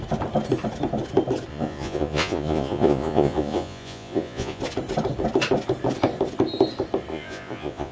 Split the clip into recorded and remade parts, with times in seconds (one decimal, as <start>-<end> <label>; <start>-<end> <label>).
0.0-1.5 recorded; 1.5-4.6 remade; 4.6-7.1 recorded; 7.1-7.9 remade